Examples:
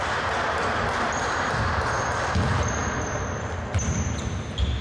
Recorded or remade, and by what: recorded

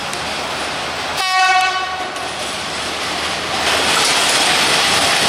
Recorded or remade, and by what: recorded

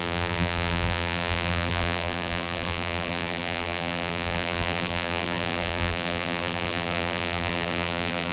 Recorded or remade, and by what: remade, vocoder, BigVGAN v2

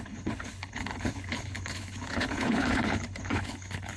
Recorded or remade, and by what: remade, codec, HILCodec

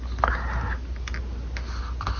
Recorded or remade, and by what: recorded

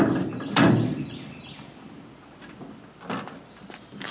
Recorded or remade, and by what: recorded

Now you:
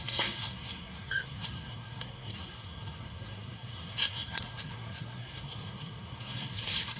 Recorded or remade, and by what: remade, codec, SNAC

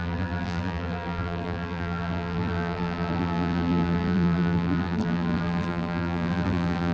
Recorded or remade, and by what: remade, vocoder, BigVGAN v2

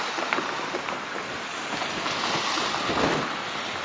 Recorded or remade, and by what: recorded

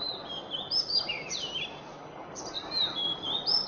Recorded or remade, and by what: recorded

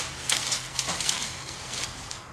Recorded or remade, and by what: remade, codec, SNAC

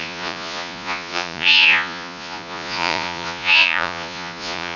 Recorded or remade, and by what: remade, vocoder, Vocos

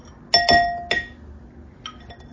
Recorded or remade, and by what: recorded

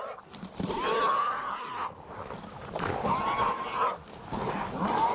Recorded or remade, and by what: recorded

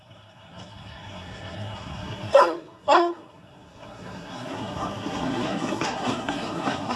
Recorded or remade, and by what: remade, codec, SNAC